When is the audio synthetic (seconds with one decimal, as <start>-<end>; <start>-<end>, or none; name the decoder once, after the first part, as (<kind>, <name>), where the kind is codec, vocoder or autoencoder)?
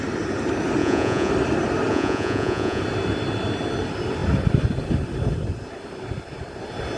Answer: 0.8-1.3 (vocoder, Vocos); 1.9-2.8